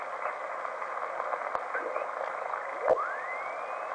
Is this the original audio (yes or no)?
yes